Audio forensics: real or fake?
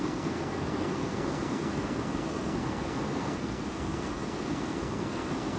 fake